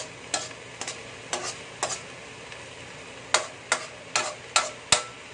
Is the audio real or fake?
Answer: real